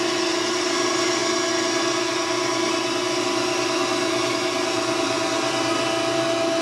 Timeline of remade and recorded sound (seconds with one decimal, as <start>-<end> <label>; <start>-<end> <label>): 0.0-6.6 recorded